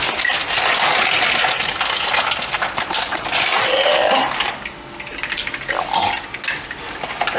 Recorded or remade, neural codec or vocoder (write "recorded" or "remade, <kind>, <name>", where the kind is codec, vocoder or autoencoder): recorded